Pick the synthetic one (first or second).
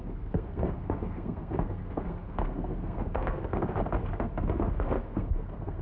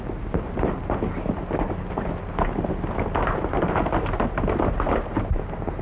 first